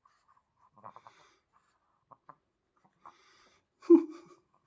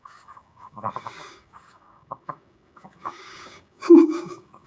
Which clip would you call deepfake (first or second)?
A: second